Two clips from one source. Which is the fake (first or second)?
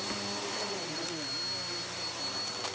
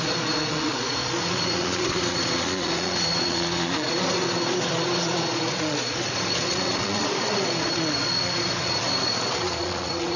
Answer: second